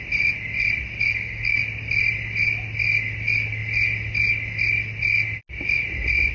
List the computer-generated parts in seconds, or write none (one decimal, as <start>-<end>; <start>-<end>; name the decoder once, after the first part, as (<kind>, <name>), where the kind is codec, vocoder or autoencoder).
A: 1.1-1.6 (codec, SNAC)